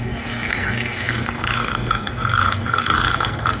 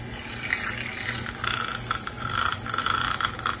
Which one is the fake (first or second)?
first